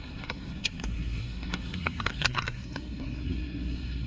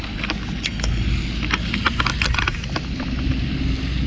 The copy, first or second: first